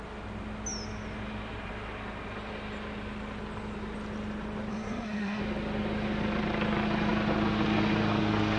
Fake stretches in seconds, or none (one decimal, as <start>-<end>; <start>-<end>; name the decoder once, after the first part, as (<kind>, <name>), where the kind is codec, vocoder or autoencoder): 4.7-5.4 (codec, SNAC)

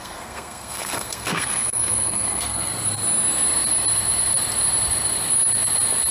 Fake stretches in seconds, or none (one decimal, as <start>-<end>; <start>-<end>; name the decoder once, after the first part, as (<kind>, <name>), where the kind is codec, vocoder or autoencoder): 0.0-2.7 (codec, SNAC)